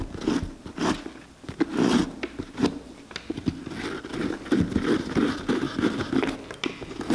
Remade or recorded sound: recorded